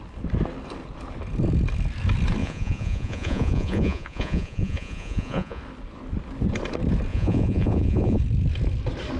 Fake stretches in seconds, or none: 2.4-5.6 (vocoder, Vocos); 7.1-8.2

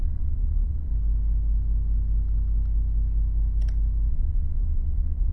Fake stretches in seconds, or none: 0.0-0.9 (vocoder, Vocos); 4.1-5.3

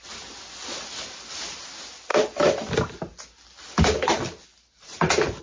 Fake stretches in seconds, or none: none